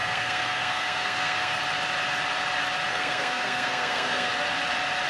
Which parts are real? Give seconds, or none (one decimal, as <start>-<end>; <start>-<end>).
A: 1.6-2.9; 4.3-5.1